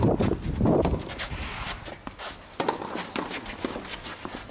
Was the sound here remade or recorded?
recorded